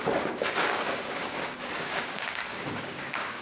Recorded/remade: remade